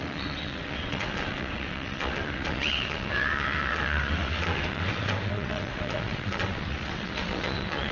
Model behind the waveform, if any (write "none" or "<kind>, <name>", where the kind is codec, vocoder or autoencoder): vocoder, WaveNeXt